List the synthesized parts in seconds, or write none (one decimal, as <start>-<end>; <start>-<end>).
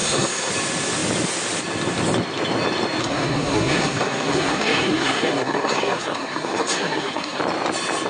0.0-0.5; 3.0-7.4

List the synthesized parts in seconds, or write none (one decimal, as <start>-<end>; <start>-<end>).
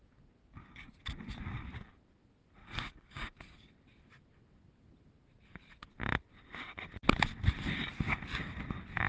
0.4-0.9; 2.6-3.7